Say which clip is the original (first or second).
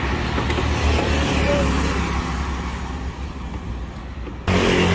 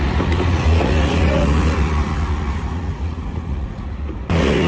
first